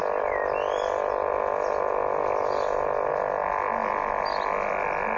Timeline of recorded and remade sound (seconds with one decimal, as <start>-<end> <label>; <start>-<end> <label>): 0.0-5.2 recorded